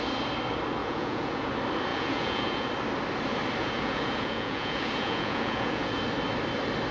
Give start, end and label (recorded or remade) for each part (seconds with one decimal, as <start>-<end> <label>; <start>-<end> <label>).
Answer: 0.0-0.8 recorded; 0.8-1.5 remade; 1.5-1.9 recorded; 1.9-2.7 remade; 2.7-3.6 recorded; 3.6-6.0 remade; 6.0-6.9 recorded

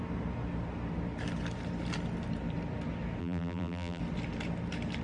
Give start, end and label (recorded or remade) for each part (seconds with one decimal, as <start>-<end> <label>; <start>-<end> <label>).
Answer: 0.0-3.2 recorded; 3.2-4.0 remade; 4.0-5.0 recorded

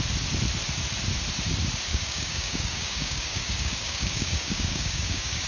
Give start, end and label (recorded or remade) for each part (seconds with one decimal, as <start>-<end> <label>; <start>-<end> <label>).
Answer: 0.0-1.9 recorded; 1.9-5.5 remade

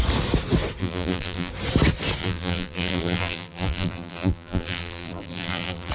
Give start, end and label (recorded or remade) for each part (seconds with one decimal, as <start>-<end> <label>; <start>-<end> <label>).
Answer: 0.0-0.8 recorded; 0.8-1.5 remade; 1.5-2.2 recorded; 2.2-5.9 remade